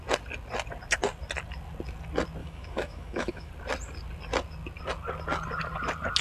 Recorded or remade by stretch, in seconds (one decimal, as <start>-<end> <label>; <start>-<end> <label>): 0.0-2.4 recorded; 2.4-3.5 remade; 3.5-6.2 recorded

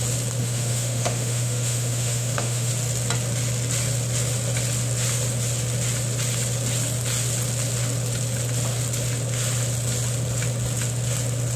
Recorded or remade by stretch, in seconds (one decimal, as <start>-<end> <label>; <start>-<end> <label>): 0.0-0.4 recorded; 0.4-2.7 remade; 2.7-11.6 recorded